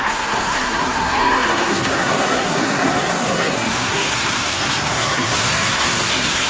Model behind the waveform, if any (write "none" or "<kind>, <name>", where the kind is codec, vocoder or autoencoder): codec, SNAC